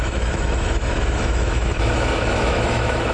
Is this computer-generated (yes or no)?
yes